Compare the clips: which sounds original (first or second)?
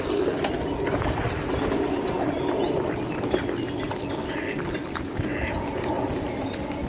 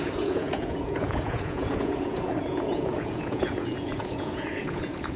first